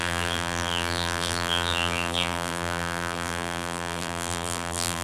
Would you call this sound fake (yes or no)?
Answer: yes